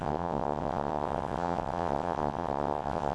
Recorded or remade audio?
remade